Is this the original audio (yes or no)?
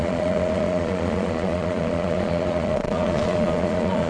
no